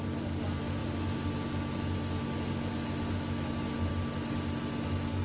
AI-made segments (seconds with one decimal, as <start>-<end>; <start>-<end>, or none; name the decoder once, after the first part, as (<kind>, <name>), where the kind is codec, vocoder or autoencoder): none